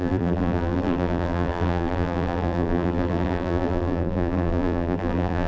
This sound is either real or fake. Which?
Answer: fake